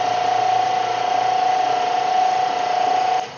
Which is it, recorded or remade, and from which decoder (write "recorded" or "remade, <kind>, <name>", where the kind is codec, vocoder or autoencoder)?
recorded